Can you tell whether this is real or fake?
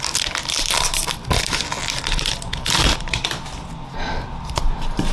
real